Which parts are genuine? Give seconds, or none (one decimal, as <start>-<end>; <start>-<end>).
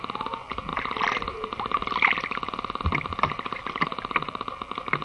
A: 0.0-5.0